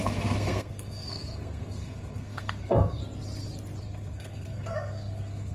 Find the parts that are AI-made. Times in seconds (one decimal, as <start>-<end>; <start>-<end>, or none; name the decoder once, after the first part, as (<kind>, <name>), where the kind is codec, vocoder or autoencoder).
0.0-3.0 (codec, SNAC); 3.8-5.5